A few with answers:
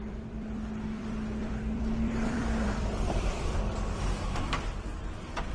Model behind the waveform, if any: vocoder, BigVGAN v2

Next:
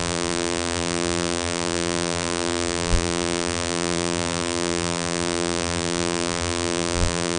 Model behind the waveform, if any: vocoder, BigVGAN v2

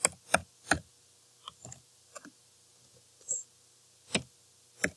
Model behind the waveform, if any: none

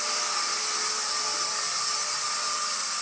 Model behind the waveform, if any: vocoder, BigVGAN v2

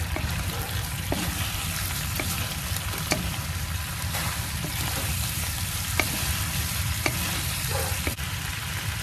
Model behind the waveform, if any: vocoder, BigVGAN v2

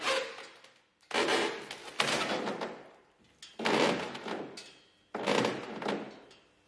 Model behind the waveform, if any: none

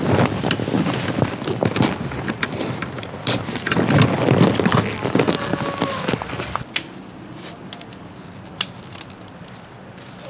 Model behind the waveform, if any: none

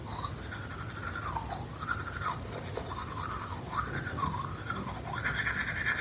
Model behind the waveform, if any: none